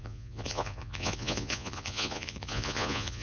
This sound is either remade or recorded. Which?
remade